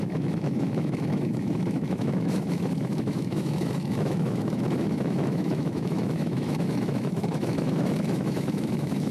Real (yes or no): no